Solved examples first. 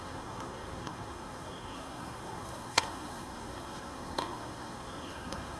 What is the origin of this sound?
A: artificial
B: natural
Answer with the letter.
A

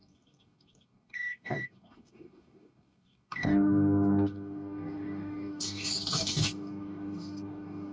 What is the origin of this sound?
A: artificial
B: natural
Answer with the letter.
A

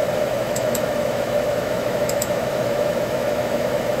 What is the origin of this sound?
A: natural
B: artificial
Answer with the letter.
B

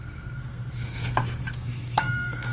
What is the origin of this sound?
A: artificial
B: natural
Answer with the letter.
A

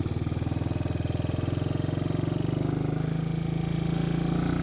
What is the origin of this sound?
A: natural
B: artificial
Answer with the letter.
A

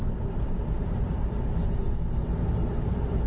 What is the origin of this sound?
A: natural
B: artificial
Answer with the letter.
A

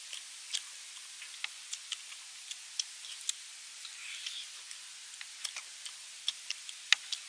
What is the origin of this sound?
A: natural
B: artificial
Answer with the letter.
A